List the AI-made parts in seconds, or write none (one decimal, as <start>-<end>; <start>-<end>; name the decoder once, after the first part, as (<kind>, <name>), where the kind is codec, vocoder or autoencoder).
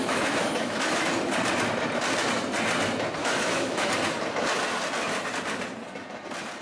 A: 0.0-1.1 (autoencoder, DAC-VAE); 3.2-3.9